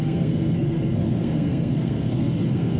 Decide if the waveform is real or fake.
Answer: fake